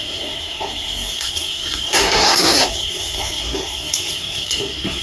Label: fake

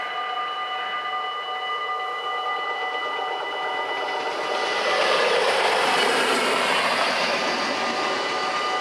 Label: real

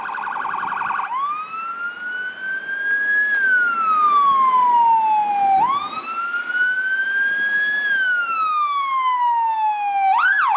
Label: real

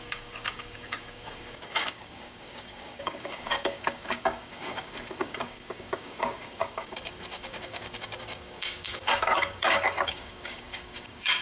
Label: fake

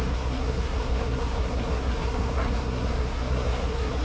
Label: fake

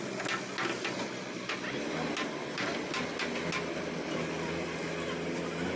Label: real